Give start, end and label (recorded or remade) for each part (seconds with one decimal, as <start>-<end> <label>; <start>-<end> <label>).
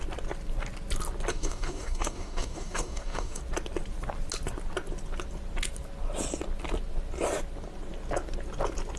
0.0-1.3 recorded; 1.3-3.4 remade; 3.4-9.0 recorded